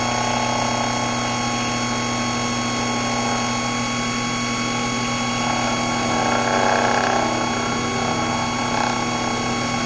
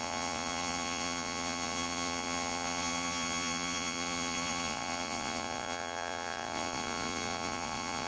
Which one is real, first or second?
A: first